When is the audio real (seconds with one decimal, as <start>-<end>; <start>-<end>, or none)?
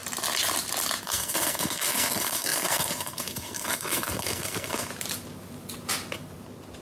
0.0-1.0; 4.9-6.8